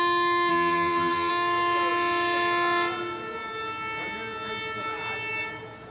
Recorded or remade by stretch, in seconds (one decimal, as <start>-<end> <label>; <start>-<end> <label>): 0.0-0.5 recorded; 0.5-1.3 remade; 1.3-5.9 recorded